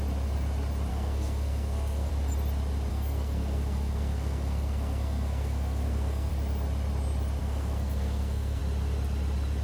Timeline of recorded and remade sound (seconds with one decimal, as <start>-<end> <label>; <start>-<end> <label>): 0.0-0.9 recorded; 0.9-2.1 remade; 2.1-2.9 recorded; 2.9-6.3 remade; 6.3-7.4 recorded; 7.4-8.6 remade; 8.6-9.6 recorded